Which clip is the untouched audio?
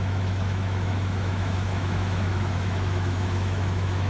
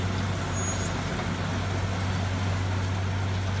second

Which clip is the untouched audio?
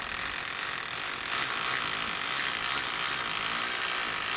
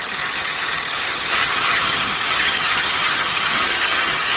first